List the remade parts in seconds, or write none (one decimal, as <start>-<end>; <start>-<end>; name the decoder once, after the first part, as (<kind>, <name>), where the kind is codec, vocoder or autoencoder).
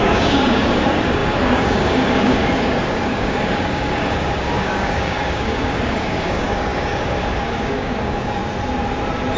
0.0-8.4 (codec, DAC)